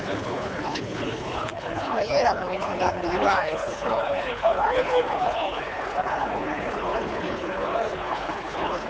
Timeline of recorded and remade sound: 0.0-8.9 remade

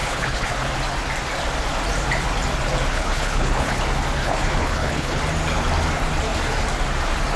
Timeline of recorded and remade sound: 0.0-0.5 remade; 0.5-2.9 recorded; 2.9-3.8 remade; 3.8-4.2 recorded; 4.2-5.2 remade; 5.2-7.4 recorded

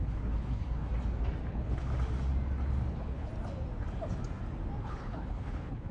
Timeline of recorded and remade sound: 0.0-0.9 remade; 0.9-1.5 recorded; 1.5-1.9 remade; 1.9-2.9 recorded; 2.9-3.3 remade; 3.3-4.8 recorded; 4.8-5.9 remade

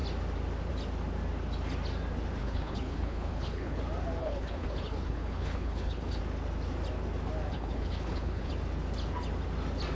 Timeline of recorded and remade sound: 0.0-2.4 recorded; 2.4-3.8 remade; 3.8-4.2 recorded; 4.2-6.2 remade; 6.2-7.5 recorded; 7.5-8.5 remade; 8.5-9.9 recorded

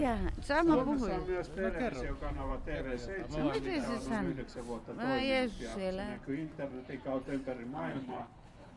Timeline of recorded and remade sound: 0.0-7.9 recorded; 7.9-8.8 remade

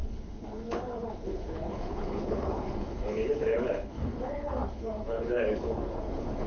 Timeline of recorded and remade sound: 0.0-6.5 remade